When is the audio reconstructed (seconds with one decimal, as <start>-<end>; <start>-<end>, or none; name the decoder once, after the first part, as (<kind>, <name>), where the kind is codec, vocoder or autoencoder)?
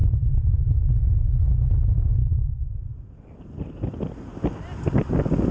1.1-2.2 (vocoder, Vocos)